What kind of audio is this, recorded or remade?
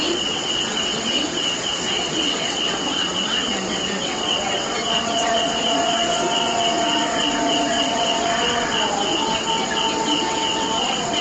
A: remade